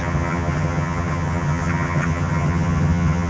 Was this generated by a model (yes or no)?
yes